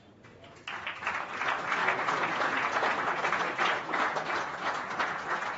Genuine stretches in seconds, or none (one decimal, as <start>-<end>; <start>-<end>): 0.0-1.8